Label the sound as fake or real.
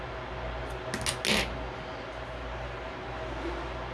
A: real